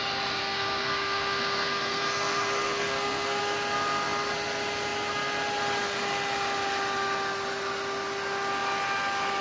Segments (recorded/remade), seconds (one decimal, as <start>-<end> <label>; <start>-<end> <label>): 0.0-0.4 recorded; 0.4-3.4 remade; 3.4-9.4 recorded